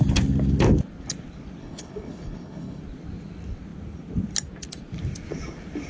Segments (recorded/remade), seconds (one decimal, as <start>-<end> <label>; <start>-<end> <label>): 0.0-1.6 recorded; 1.6-2.8 remade; 2.8-5.9 recorded